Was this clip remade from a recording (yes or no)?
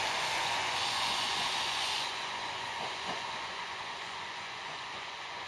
yes